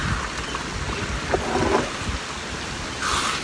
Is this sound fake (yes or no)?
no